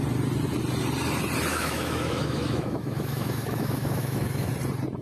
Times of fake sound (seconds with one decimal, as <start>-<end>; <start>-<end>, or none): 1.5-4.5